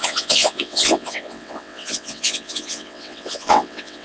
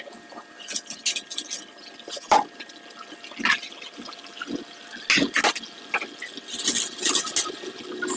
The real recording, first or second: second